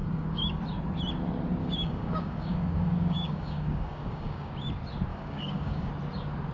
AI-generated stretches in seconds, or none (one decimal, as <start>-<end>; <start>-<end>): 0.0-0.6; 1.6-4.5; 5.1-5.9